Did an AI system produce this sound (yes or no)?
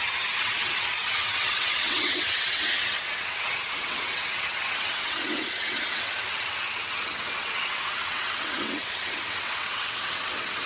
yes